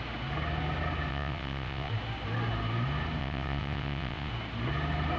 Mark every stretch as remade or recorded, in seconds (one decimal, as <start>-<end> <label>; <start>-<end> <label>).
0.0-1.1 recorded; 1.1-1.9 remade; 1.9-3.2 recorded; 3.2-4.3 remade; 4.3-5.2 recorded